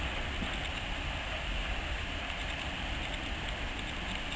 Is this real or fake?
fake